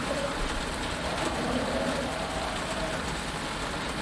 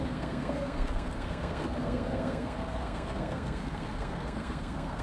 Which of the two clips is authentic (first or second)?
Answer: first